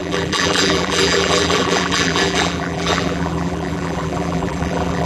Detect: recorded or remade remade